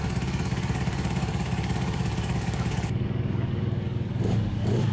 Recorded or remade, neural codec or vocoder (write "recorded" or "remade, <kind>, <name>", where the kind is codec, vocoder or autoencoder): remade, codec, DAC